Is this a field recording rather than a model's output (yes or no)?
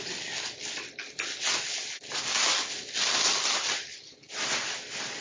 yes